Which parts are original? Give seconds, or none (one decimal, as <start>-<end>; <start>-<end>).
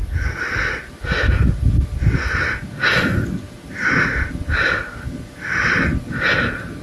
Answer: 0.0-6.8